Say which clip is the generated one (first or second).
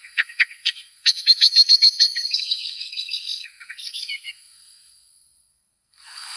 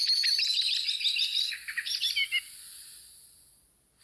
first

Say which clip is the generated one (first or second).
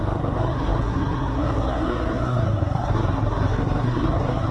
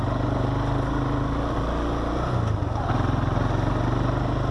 first